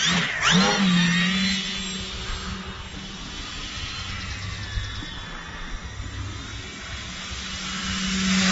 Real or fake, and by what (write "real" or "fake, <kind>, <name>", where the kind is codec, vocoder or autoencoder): real